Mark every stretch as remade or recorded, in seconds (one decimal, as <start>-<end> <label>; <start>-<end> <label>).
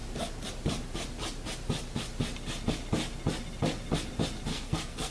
0.0-4.5 recorded; 4.5-5.1 remade